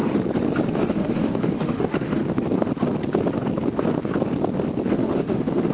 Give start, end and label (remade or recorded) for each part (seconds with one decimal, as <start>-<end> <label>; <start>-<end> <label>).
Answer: 0.0-0.7 recorded; 0.7-2.2 remade; 2.2-4.9 recorded; 4.9-5.7 remade